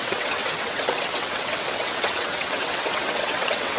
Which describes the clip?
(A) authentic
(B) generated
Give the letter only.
B